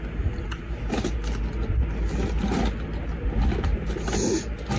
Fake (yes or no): no